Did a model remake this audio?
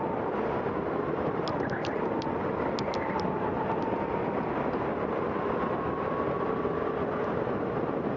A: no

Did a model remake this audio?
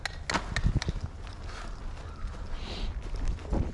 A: no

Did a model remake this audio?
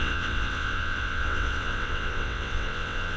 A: yes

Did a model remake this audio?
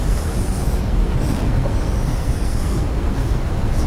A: yes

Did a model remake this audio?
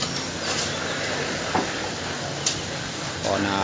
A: no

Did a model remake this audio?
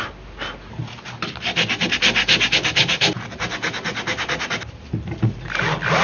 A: no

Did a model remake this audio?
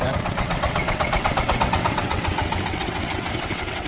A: yes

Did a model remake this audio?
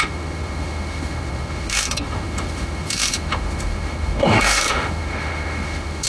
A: yes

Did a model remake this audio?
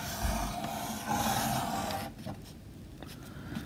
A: no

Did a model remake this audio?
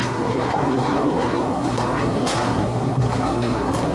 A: yes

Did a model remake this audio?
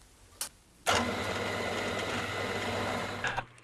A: no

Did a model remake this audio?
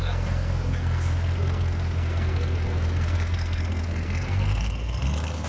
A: yes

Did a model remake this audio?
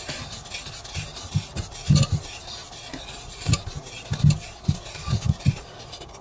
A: no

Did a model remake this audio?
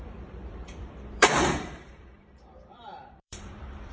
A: yes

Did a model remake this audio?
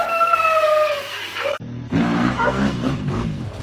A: yes